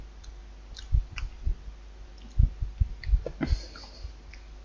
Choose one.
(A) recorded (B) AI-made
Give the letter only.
A